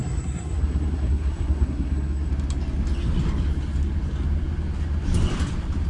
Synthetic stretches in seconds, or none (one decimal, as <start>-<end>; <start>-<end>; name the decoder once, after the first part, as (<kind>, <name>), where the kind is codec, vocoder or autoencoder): 0.0-2.3 (codec, SNAC)

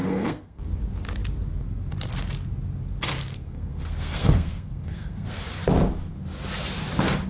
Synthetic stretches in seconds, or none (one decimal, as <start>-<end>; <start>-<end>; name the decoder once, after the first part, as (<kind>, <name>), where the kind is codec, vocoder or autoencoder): 0.0-0.7 (codec, SNAC); 3.3-5.4

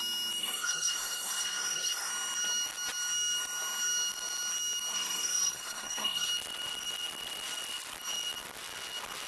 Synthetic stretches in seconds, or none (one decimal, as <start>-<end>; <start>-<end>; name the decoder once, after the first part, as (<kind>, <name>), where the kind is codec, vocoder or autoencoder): 0.4-2.1 (codec, SNAC); 4.9-6.3

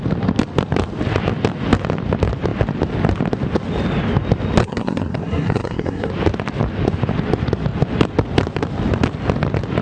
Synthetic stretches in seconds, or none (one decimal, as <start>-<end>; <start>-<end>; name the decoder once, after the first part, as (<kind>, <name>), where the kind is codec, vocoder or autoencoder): 4.6-6.1 (codec, SNAC)

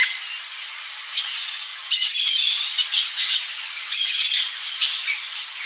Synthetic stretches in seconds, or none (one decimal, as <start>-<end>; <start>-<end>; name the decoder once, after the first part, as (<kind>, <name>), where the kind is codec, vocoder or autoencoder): none

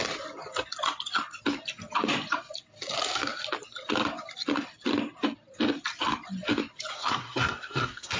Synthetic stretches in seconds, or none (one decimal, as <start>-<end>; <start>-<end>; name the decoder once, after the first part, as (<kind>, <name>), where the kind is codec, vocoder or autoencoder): 6.9-8.2 (codec, SNAC)

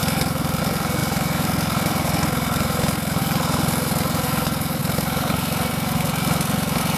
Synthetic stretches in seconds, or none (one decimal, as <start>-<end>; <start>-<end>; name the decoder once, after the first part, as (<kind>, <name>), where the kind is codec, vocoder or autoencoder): 0.0-7.0 (codec, SNAC)

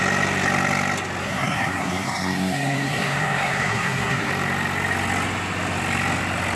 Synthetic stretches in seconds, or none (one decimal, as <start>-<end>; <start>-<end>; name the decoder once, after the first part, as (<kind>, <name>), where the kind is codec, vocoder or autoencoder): 1.2-4.3 (codec, SNAC)